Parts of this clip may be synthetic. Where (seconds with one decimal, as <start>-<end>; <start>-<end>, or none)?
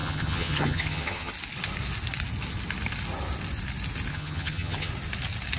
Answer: 0.0-1.3; 4.1-4.9